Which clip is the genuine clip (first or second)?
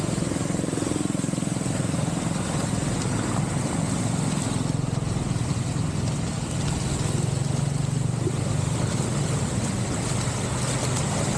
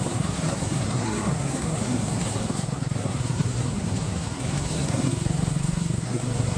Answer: first